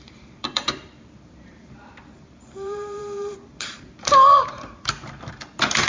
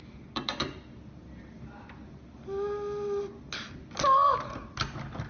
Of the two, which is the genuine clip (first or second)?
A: second